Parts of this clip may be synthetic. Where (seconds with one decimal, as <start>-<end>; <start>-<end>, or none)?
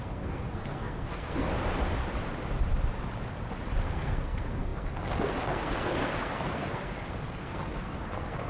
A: 0.0-1.5; 3.8-8.5